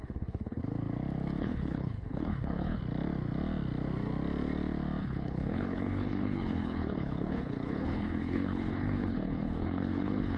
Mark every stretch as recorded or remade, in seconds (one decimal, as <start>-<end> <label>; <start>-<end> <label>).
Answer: 0.0-0.6 remade; 0.6-1.4 recorded; 1.4-2.8 remade; 2.8-5.0 recorded; 5.0-10.4 remade